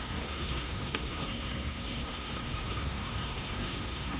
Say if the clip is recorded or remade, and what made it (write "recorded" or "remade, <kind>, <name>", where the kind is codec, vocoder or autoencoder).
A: remade, codec, SNAC